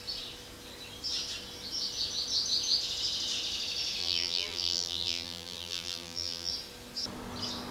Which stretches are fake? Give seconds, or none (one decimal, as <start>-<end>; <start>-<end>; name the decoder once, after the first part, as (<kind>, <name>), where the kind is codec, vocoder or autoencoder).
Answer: 4.0-6.5 (vocoder, BigVGAN v2)